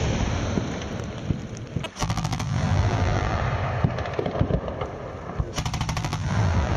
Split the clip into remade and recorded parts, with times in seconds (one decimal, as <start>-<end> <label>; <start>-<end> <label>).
0.0-2.0 recorded; 2.0-3.4 remade; 3.4-6.0 recorded; 6.0-6.8 remade